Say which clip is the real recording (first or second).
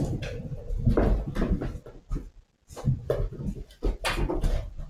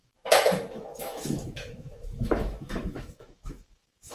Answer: first